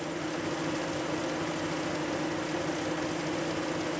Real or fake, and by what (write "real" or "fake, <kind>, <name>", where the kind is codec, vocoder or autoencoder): real